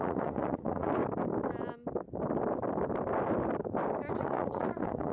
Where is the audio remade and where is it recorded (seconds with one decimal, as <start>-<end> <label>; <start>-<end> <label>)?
0.0-1.0 remade; 1.0-4.1 recorded; 4.1-5.1 remade